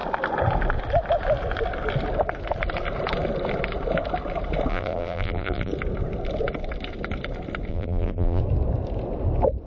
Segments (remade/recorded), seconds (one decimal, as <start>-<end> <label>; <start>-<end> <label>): 0.0-4.7 recorded; 4.7-5.7 remade; 5.7-7.7 recorded; 7.7-8.4 remade; 8.4-9.7 recorded